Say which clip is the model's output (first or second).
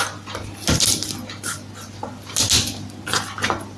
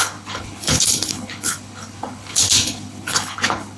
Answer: second